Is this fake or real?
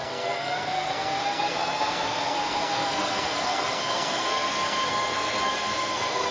fake